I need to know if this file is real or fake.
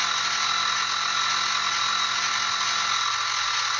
real